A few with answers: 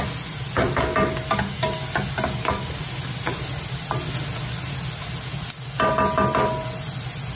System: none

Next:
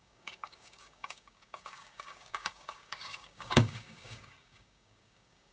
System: codec, DAC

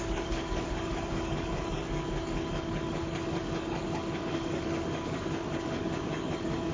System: codec, DAC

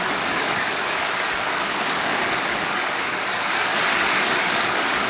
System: codec, DAC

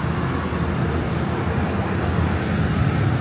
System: none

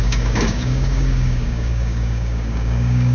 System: codec, DAC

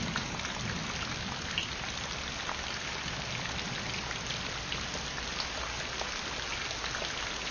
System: none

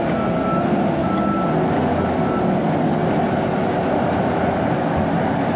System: none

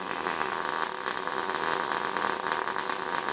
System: none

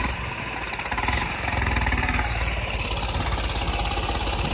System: none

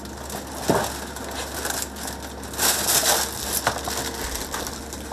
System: none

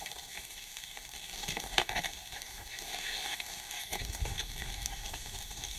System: codec, DAC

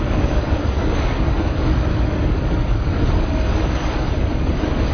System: codec, DAC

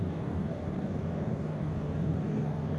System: codec, DAC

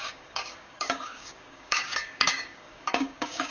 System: codec, DAC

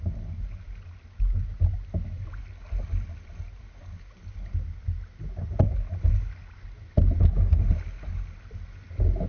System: none